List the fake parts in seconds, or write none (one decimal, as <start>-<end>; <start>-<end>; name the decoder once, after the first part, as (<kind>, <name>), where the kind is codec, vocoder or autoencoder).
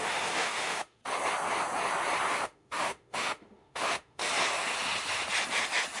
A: 0.0-1.0 (autoencoder, DAC-VAE); 2.3-4.2